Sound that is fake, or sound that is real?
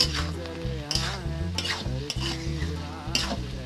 real